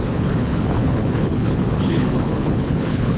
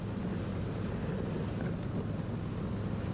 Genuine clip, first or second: second